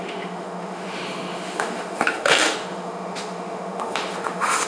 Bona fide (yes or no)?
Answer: no